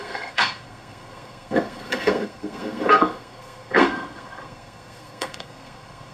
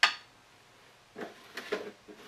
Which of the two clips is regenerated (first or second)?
first